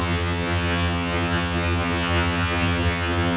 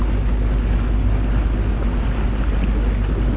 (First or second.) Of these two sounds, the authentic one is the second